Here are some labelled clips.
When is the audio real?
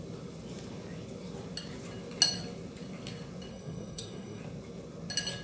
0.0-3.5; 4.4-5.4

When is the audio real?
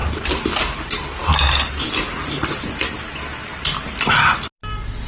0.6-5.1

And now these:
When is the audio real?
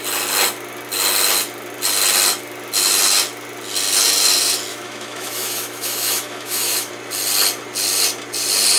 0.0-4.7; 6.9-8.8